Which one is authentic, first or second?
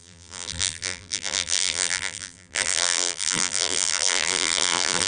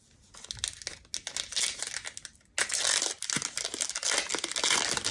second